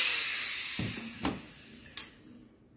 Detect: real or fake real